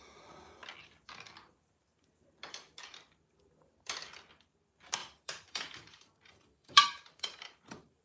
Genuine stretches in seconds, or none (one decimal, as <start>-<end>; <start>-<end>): 0.0-5.0